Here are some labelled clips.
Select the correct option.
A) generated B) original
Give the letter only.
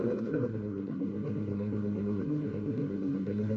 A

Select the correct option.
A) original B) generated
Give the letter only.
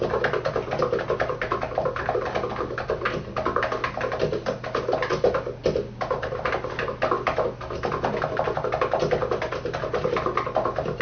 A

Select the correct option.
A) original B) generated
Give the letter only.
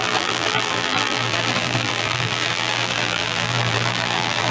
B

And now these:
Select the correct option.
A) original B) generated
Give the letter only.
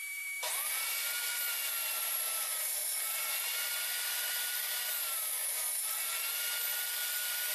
B